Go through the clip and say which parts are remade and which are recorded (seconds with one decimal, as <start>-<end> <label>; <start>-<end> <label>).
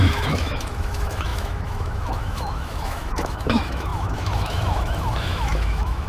0.0-6.1 remade